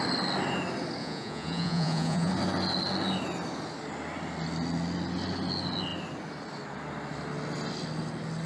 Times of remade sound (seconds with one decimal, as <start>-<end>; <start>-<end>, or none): 1.0-2.3

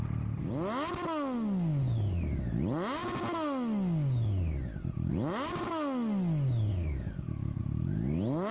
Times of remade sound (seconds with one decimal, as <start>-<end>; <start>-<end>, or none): 6.7-7.6

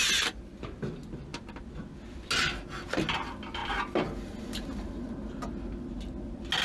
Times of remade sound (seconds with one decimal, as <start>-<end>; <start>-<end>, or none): none

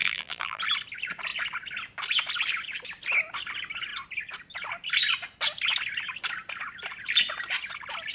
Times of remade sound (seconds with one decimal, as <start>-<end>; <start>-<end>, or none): 0.0-0.6

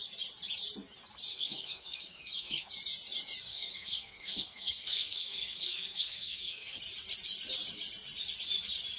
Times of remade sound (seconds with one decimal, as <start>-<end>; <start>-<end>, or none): 1.3-2.7; 3.5-6.8

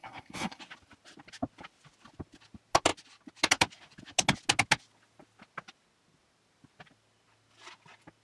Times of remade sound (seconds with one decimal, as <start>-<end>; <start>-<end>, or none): 0.0-0.6

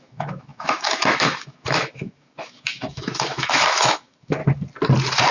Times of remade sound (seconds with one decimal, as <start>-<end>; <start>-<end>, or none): 0.0-4.4

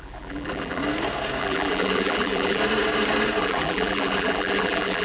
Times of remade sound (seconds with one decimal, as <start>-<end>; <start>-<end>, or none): 0.0-0.8; 1.4-2.6; 3.4-5.0